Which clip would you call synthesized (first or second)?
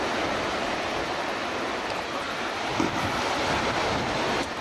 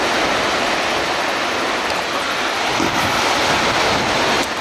first